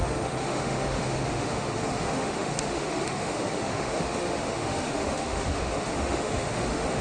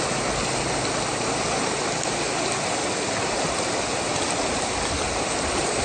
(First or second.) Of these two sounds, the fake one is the first